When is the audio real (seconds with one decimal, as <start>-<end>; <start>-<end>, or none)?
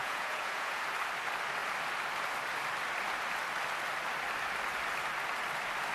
0.8-5.9